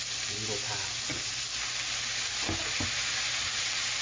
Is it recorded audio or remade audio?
recorded